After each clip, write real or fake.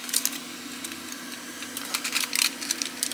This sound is real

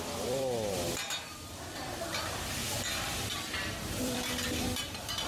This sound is fake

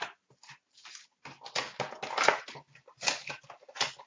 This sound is real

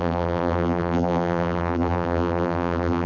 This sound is fake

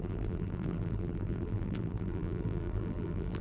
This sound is fake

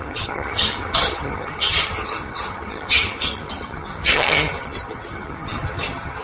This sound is fake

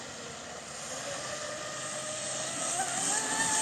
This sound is real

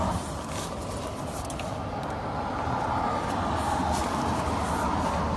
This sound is real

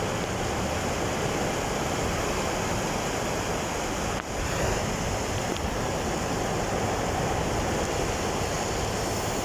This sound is real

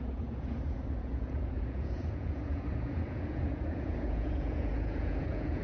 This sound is fake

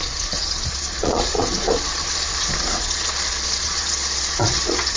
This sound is fake